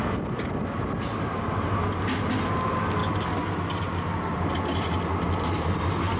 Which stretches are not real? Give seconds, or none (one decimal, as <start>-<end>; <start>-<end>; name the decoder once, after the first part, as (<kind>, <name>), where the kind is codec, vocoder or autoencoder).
none